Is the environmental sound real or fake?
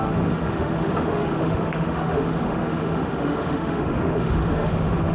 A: fake